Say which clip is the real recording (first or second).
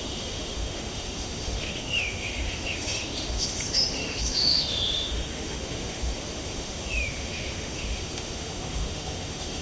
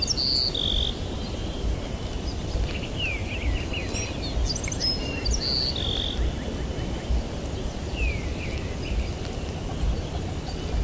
second